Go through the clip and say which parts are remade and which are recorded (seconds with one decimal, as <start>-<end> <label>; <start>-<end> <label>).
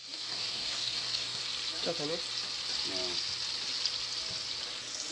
0.0-1.4 remade; 1.4-5.1 recorded